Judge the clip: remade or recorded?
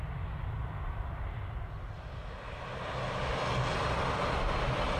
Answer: recorded